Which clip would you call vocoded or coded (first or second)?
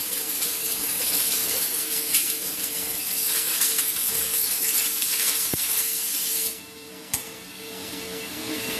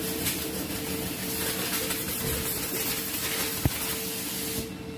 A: first